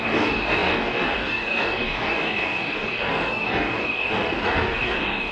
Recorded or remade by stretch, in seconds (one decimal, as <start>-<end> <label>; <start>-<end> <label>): 0.0-5.3 remade